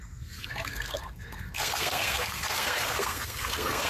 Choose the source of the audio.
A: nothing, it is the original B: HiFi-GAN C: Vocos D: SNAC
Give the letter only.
D